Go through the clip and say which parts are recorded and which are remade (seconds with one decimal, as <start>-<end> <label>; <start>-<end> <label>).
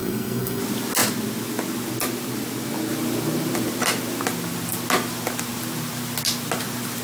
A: 0.0-0.6 remade; 0.6-7.0 recorded